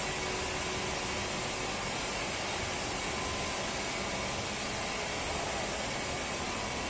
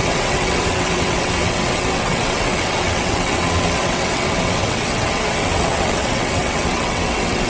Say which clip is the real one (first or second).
first